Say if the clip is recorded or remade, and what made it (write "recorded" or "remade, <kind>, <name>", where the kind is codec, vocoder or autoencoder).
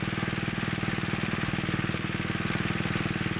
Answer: recorded